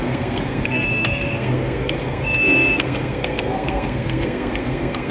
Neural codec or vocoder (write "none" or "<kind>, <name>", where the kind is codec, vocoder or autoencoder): codec, SNAC